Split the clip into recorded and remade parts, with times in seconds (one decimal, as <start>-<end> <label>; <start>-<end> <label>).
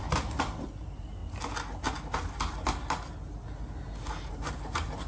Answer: 0.0-1.2 remade; 1.2-4.3 recorded; 4.3-5.1 remade